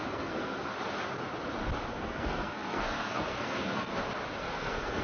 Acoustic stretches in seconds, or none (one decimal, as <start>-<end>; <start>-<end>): 0.7-1.9; 3.9-4.4